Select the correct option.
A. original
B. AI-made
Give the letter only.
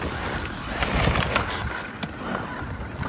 A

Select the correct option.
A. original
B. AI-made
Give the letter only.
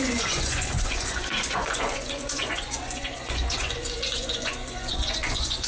B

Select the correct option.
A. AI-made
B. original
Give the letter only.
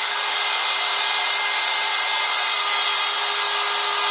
B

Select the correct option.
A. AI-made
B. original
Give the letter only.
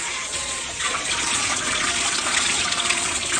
A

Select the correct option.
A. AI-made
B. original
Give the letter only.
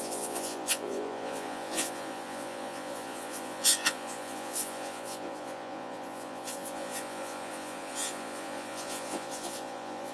A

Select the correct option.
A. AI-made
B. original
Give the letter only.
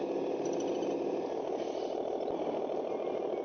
B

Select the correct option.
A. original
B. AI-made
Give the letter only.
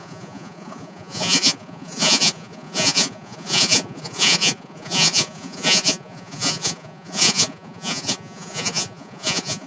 B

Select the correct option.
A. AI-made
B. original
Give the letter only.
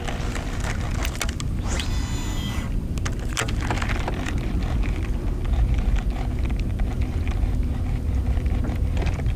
B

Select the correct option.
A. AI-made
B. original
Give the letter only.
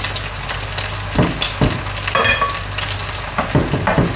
B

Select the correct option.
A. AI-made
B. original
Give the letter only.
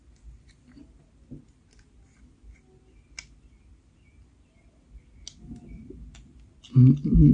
B